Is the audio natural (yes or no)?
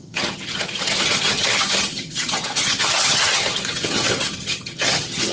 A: no